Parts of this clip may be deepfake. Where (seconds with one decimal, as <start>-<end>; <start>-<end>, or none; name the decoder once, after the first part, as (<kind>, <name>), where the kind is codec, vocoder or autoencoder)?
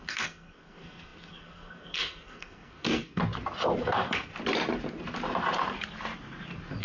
0.0-3.2 (codec, SNAC); 3.8-4.3